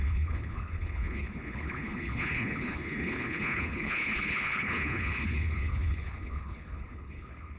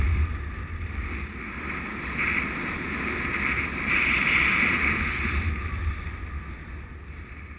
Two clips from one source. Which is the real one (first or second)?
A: second